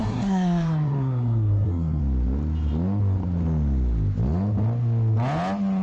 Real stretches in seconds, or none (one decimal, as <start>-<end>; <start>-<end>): 2.0-5.8